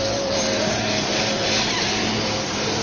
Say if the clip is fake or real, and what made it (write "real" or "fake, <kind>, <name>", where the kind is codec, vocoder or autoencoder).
fake, vocoder, BigVGAN v2